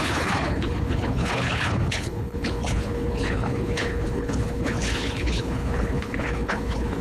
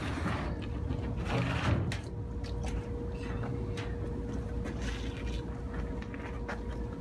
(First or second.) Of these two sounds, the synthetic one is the first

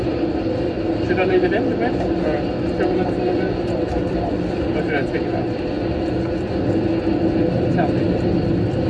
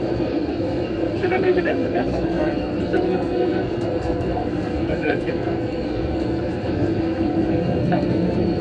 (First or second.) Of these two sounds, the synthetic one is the second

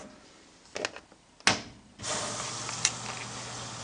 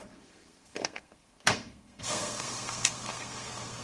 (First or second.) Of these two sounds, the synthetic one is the second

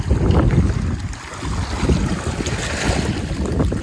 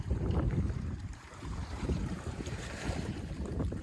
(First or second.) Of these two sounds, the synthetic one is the second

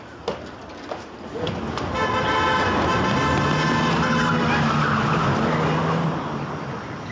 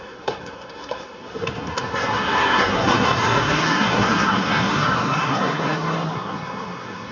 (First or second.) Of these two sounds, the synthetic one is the second